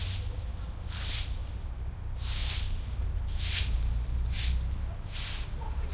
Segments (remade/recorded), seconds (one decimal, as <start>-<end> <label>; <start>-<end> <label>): 0.0-5.9 recorded